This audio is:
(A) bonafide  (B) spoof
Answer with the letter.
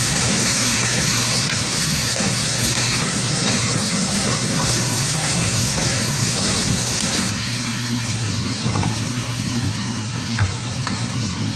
B